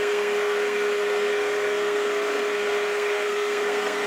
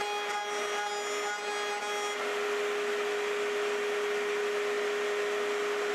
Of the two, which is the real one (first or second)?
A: second